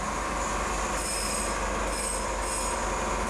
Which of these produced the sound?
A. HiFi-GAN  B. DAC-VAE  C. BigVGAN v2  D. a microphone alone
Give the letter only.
D